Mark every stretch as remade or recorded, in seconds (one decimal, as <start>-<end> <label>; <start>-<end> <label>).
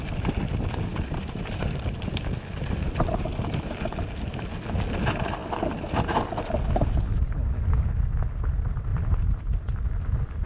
0.0-0.9 recorded; 0.9-1.6 remade; 1.6-10.5 recorded